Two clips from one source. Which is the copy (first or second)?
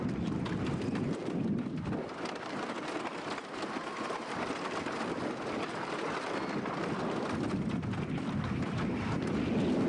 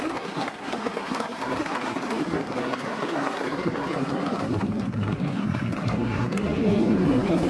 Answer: second